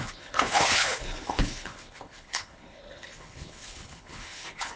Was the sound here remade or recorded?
remade